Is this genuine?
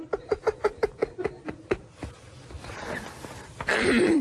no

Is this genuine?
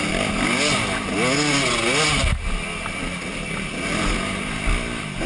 yes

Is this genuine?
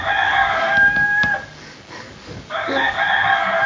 no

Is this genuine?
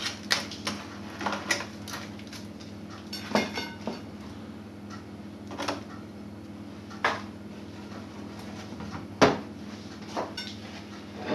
yes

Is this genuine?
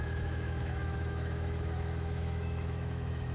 no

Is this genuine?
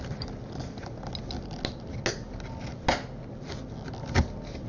yes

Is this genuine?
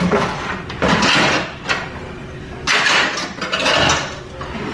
yes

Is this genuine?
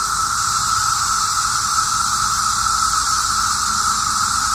yes